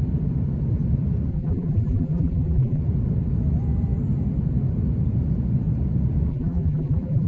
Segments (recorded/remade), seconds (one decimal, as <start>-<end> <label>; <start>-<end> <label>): 0.0-1.3 recorded; 1.3-2.8 remade; 2.8-6.3 recorded; 6.3-7.3 remade